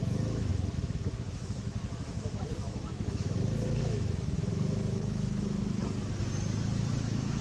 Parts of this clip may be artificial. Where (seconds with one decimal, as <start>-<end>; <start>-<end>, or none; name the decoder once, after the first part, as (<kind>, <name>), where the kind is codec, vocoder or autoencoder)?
0.0-5.8 (autoencoder, DAC-VAE); 6.9-7.4